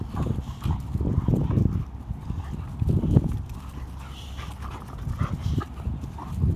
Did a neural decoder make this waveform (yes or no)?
no